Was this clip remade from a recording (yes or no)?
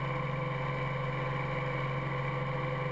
no